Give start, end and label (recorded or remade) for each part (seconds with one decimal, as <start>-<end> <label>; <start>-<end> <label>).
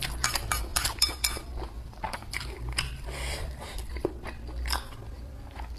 0.0-0.7 recorded; 0.7-4.1 remade; 4.1-5.8 recorded